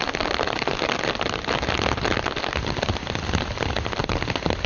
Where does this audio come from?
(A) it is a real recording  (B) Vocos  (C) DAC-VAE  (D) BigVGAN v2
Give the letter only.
A